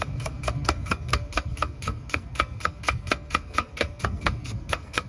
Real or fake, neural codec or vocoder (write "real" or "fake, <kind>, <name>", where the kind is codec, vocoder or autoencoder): fake, codec, SNAC